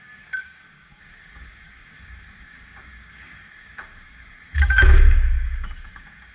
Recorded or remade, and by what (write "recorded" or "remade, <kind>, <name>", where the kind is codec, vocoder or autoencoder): remade, codec, DAC